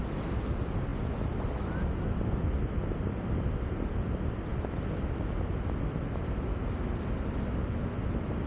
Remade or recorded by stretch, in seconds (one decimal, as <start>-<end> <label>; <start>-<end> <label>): 0.0-8.5 recorded